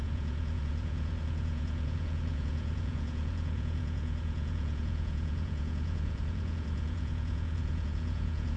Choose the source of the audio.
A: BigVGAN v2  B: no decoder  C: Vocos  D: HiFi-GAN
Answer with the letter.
C